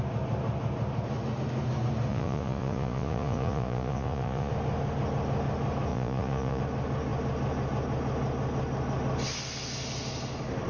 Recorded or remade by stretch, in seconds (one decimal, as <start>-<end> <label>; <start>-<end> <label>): 0.0-2.1 recorded; 2.1-4.5 remade; 4.5-5.9 recorded; 5.9-6.6 remade; 6.6-10.7 recorded